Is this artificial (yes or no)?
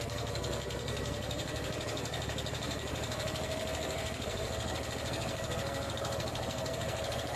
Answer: yes